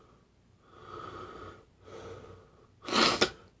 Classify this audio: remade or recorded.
recorded